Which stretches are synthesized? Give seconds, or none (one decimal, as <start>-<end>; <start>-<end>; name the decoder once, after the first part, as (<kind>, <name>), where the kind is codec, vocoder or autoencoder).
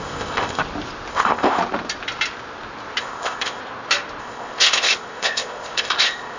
0.0-0.6 (codec, ZipCodec); 1.1-1.6; 3.0-3.6; 4.2-6.4